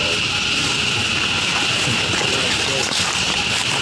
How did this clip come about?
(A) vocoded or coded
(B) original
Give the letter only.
B